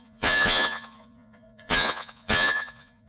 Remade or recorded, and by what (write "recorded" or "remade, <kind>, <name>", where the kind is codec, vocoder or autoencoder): remade, vocoder, Vocos